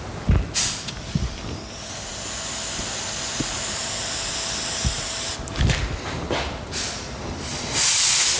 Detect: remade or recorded recorded